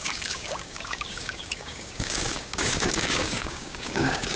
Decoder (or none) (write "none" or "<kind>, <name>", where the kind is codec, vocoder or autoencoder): codec, DAC